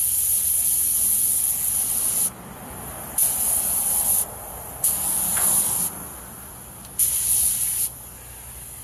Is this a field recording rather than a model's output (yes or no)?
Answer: yes